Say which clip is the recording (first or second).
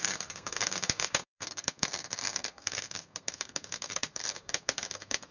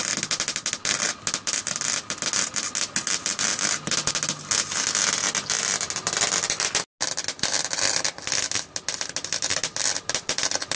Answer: second